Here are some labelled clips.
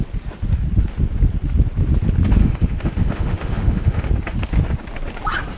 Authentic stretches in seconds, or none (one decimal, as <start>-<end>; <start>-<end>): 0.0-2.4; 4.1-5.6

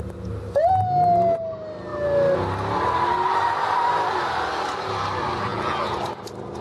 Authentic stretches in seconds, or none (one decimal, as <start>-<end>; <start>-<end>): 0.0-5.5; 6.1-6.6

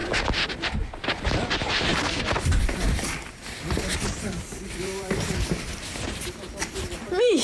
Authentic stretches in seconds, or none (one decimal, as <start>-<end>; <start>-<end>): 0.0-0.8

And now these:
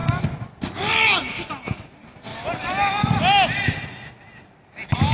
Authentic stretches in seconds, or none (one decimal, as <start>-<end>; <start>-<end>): 0.0-5.1

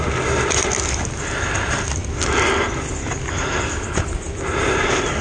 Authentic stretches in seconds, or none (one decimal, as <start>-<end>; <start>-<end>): 0.0-5.2